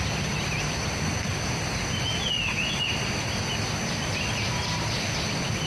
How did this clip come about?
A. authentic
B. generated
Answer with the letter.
A